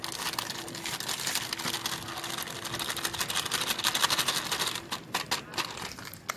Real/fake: real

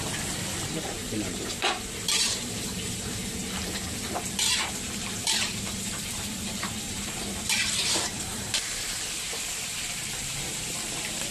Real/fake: fake